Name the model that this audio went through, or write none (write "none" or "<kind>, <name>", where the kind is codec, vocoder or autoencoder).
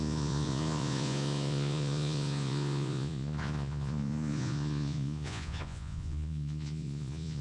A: vocoder, Vocos